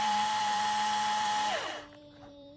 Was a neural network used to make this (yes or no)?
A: yes